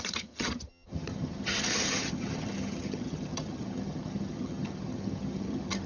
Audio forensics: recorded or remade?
remade